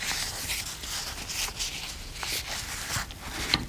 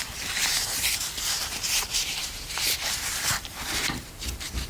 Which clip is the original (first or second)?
first